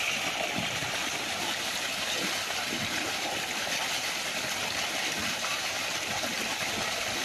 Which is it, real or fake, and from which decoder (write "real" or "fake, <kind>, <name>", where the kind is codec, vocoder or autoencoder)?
fake, vocoder, BigVGAN v2